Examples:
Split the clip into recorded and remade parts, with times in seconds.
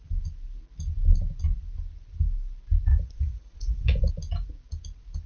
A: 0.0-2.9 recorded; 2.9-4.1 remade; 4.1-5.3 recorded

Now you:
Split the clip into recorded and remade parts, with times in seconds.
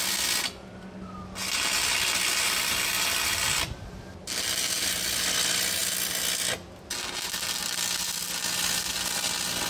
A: 0.0-1.4 recorded; 1.4-3.8 remade; 3.8-9.7 recorded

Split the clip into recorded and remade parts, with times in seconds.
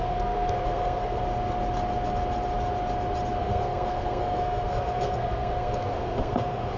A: 0.0-1.2 remade; 1.2-3.4 recorded; 3.4-6.8 remade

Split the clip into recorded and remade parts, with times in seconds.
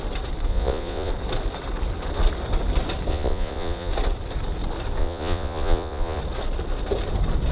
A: 0.0-0.5 recorded; 0.5-1.1 remade; 1.1-3.1 recorded; 3.1-3.9 remade; 3.9-5.0 recorded; 5.0-6.2 remade; 6.2-7.5 recorded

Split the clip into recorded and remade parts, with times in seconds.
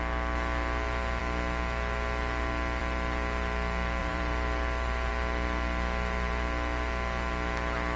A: 0.0-4.0 recorded; 4.0-5.1 remade; 5.1-8.0 recorded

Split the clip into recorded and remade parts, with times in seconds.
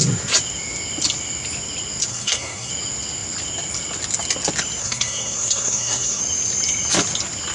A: 0.0-2.1 recorded; 2.1-2.7 remade; 2.7-4.8 recorded; 4.8-6.2 remade; 6.2-7.5 recorded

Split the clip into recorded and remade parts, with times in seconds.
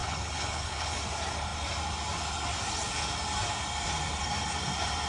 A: 0.0-1.0 remade; 1.0-5.1 recorded